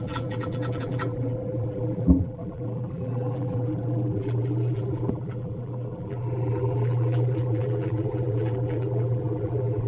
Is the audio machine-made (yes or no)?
yes